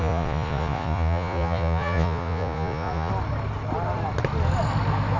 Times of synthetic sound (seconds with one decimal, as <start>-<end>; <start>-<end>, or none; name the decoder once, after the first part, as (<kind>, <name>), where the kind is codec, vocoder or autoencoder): 0.0-3.1 (vocoder, Vocos)